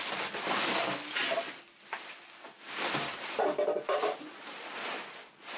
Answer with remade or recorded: recorded